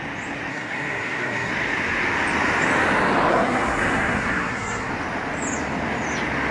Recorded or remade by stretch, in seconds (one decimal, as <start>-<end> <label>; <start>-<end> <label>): 0.0-0.5 recorded; 0.5-1.5 remade; 1.5-3.3 recorded; 3.3-4.9 remade; 4.9-6.5 recorded